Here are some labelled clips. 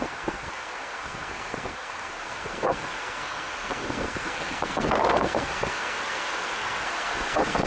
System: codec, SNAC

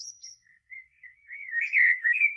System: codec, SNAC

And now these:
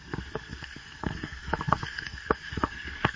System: codec, SNAC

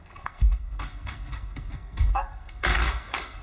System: codec, SNAC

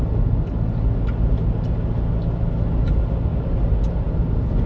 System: none